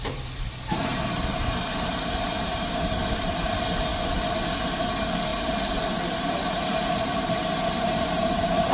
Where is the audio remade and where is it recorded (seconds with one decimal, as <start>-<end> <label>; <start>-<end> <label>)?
0.0-3.9 remade; 3.9-4.5 recorded; 4.5-8.7 remade